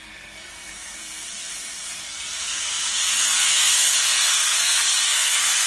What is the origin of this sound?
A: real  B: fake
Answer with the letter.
B